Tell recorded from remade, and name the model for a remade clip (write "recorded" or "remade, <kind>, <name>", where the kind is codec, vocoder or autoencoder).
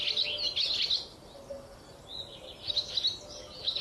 recorded